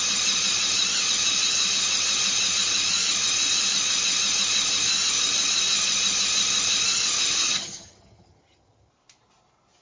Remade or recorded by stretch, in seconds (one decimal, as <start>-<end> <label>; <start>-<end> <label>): 0.0-7.4 recorded; 7.4-8.9 remade; 8.9-9.8 recorded

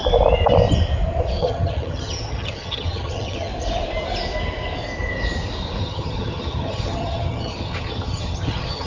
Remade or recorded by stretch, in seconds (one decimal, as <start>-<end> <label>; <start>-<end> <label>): 0.0-1.4 recorded; 1.4-3.5 remade; 3.5-5.8 recorded; 5.8-8.9 remade